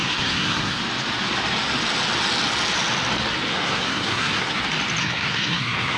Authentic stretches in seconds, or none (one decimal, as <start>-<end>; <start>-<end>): 0.8-3.5; 4.6-5.0